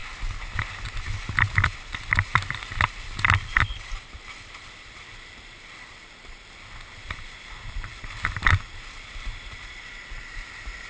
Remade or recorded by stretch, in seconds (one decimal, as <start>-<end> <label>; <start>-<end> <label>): 0.0-1.5 recorded; 1.5-10.9 remade